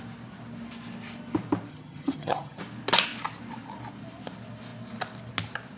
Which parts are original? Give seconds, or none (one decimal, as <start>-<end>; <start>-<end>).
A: 0.0-1.7; 2.6-5.8